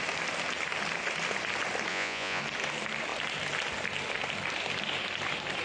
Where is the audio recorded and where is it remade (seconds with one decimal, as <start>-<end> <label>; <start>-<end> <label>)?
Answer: 0.0-1.9 recorded; 1.9-2.4 remade; 2.4-5.6 recorded